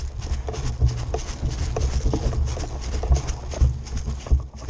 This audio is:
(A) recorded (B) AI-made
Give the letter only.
A